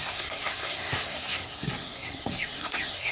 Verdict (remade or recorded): remade